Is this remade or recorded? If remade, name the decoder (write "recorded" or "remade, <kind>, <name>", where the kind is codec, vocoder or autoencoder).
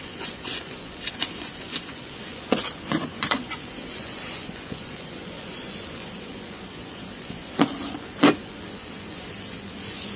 remade, vocoder, Vocos